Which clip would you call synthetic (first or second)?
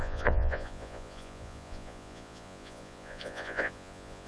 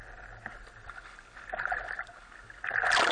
first